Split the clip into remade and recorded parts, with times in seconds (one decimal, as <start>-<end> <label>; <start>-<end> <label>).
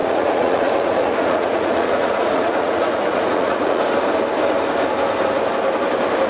0.0-3.8 remade; 3.8-6.3 recorded